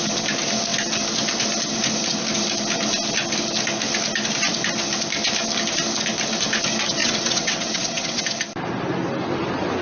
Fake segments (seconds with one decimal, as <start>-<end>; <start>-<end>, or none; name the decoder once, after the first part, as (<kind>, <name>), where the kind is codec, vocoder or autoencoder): 7.0-8.2 (vocoder, WaveNeXt)